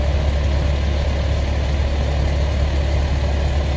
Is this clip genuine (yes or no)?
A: yes